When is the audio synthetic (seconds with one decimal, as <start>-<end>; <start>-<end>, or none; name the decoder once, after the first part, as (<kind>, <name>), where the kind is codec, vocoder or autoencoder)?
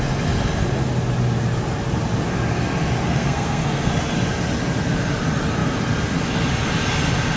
3.1-3.9 (codec, SNAC)